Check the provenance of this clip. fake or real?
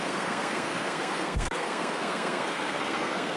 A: fake